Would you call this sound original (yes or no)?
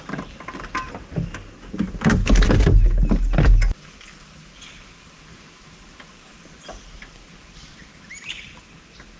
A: yes